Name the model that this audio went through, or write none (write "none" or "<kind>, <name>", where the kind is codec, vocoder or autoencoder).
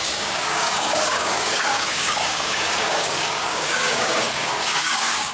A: codec, DAC